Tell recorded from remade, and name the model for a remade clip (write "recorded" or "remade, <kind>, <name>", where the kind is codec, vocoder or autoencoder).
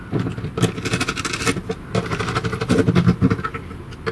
recorded